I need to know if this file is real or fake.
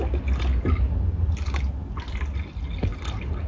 real